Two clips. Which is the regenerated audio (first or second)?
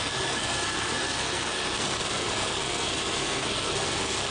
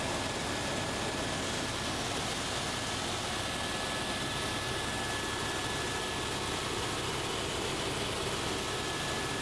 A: first